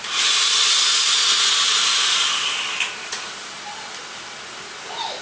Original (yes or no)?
yes